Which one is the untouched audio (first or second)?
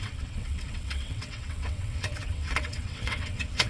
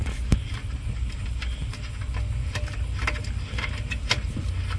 second